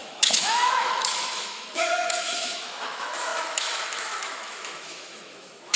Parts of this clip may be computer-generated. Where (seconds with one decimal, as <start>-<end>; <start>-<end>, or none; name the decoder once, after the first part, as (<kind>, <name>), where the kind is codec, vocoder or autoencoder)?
0.0-5.8 (autoencoder, DAC-VAE)